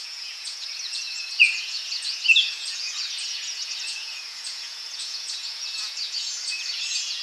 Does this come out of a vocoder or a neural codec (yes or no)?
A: yes